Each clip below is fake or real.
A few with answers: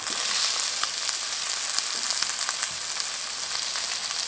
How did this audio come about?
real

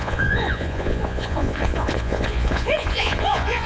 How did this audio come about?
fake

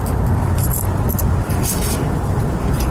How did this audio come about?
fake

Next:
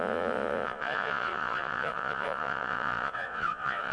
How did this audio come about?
fake